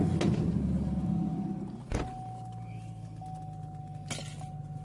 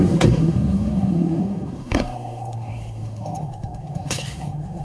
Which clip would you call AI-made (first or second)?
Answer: second